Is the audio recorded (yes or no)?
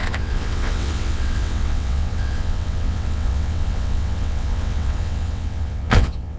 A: no